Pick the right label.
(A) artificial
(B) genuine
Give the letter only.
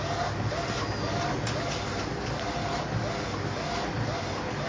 B